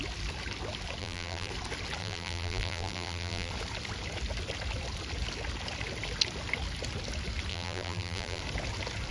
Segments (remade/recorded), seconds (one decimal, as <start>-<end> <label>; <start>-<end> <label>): 0.0-1.0 recorded; 1.0-1.5 remade; 1.5-2.0 recorded; 2.0-3.5 remade; 3.5-7.5 recorded; 7.5-8.4 remade; 8.4-9.1 recorded